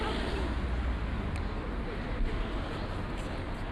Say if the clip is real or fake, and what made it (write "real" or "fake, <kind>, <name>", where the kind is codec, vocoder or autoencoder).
real